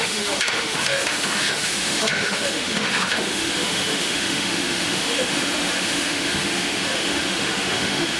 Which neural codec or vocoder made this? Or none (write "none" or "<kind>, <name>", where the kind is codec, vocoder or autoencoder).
autoencoder, DAC-VAE